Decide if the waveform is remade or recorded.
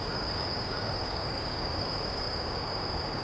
remade